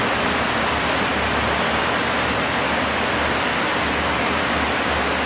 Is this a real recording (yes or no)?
yes